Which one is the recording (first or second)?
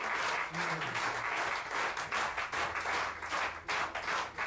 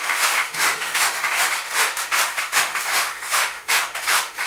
first